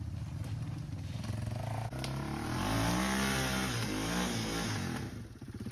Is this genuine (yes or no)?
yes